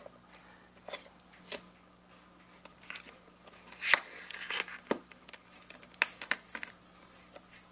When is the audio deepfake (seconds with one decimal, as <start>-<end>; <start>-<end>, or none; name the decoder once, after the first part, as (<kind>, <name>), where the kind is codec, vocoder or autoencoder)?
none